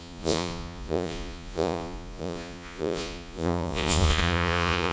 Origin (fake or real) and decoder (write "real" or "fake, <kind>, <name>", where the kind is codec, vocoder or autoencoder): fake, vocoder, Vocos